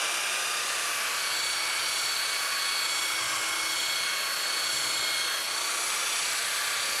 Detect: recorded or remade recorded